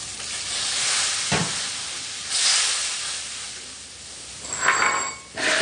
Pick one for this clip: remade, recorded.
recorded